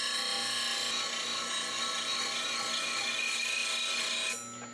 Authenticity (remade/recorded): recorded